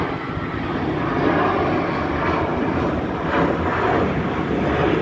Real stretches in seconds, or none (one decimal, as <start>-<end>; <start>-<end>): 3.7-5.0